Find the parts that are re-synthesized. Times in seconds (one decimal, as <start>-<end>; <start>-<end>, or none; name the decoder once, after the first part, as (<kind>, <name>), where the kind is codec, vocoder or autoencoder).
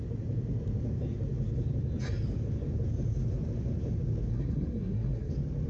4.3-5.3 (codec, SNAC)